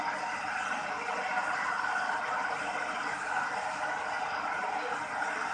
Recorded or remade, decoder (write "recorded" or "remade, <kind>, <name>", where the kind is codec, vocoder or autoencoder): recorded